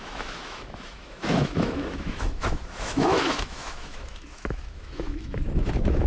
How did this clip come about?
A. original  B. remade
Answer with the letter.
B